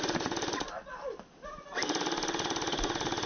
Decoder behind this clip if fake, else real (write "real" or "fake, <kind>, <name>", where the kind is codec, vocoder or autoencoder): real